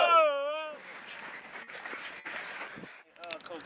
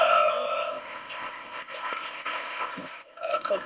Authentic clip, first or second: first